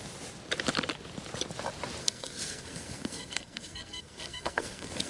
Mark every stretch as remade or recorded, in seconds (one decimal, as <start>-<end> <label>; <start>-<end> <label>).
0.0-2.0 recorded; 2.0-5.1 remade